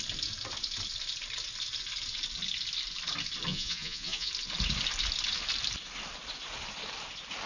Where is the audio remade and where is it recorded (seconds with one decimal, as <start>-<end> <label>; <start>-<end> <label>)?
0.0-3.5 recorded; 3.5-4.3 remade; 4.3-7.5 recorded